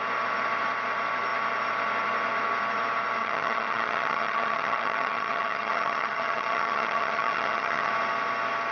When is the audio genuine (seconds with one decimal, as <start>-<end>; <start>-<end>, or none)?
0.0-3.2; 7.9-8.7